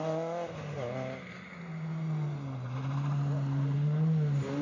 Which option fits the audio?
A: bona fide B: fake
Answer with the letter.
A